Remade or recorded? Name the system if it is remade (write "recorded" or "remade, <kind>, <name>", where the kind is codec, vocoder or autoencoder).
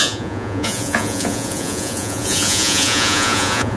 remade, vocoder, Vocos